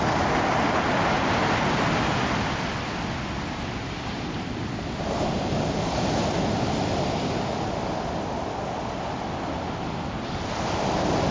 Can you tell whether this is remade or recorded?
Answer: recorded